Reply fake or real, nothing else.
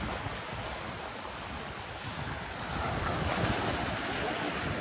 real